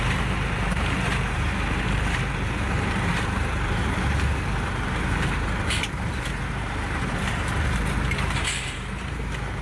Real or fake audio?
fake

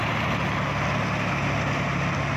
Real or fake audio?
real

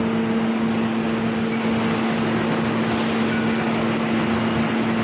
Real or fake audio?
real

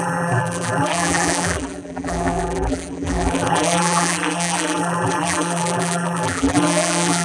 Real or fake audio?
fake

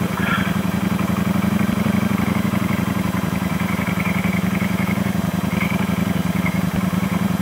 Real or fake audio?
fake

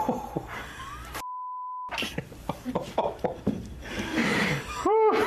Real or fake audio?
fake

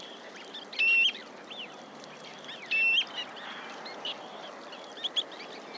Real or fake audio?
real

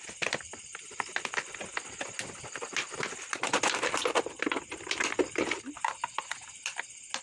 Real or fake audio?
real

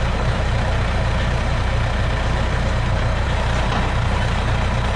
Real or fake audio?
fake